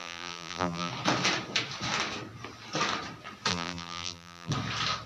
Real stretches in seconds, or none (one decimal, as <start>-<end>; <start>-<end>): 0.9-3.5; 4.5-5.1